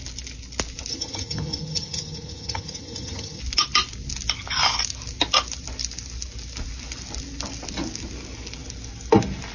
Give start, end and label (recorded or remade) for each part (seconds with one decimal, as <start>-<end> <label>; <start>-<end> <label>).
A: 0.0-0.9 recorded; 0.9-3.4 remade; 3.4-9.5 recorded